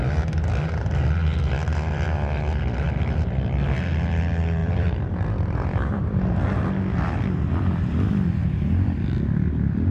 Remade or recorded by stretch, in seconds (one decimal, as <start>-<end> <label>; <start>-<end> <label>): 0.0-4.6 recorded; 4.6-6.2 remade; 6.2-9.9 recorded